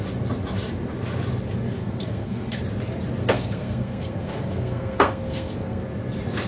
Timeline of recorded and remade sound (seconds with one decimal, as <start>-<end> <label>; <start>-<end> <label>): 0.0-1.8 recorded; 1.8-2.6 remade; 2.6-3.2 recorded; 3.2-5.8 remade; 5.8-6.5 recorded